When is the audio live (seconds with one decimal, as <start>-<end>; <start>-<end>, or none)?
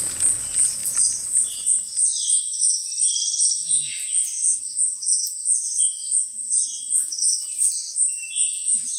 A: 0.0-9.0